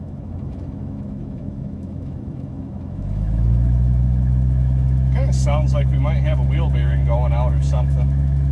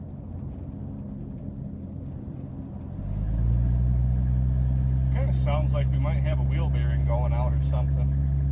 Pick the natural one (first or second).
second